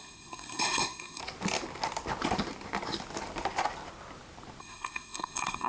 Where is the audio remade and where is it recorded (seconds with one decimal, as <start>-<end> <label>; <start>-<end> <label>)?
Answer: 0.0-1.2 remade; 1.2-4.6 recorded; 4.6-5.7 remade